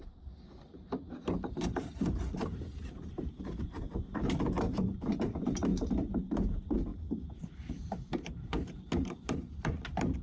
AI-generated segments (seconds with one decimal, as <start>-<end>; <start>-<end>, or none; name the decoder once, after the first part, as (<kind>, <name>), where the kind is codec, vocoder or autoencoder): 0.0-5.7 (vocoder, BigVGAN v2); 6.2-10.2